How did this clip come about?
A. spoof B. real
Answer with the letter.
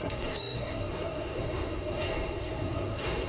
A